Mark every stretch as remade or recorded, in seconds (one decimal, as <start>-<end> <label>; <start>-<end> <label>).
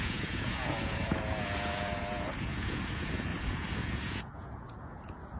0.0-5.4 remade